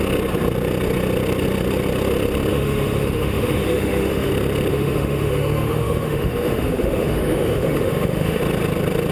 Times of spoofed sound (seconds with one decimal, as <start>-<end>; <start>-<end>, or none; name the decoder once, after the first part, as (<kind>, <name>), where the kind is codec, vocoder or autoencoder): 2.5-4.3 (autoencoder, DAC-VAE); 4.7-8.4

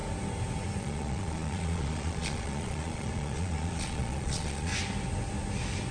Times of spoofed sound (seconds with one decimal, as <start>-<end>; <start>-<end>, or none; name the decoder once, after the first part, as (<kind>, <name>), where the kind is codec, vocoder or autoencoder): 0.8-4.7 (vocoder, Vocos)

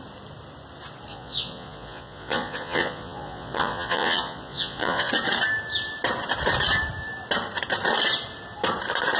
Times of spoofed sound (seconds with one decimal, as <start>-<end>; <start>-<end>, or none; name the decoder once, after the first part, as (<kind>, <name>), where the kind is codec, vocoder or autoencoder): 1.1-5.1 (vocoder, Vocos)

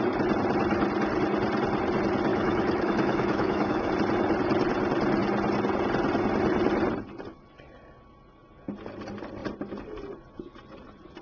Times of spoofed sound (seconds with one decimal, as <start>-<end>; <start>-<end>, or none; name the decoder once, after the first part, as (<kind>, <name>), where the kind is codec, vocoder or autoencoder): 2.3-3.9 (autoencoder, DAC-VAE)

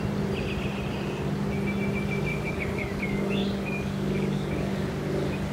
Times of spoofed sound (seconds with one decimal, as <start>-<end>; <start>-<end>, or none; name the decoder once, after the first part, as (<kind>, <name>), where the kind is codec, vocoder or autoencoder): 2.3-4.9 (codec, DAC)

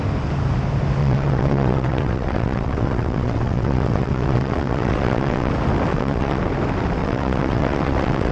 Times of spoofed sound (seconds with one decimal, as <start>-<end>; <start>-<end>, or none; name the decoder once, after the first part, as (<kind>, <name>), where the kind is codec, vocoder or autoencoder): 1.0-5.5 (vocoder, WaveNeXt); 5.9-6.4; 7.0-8.3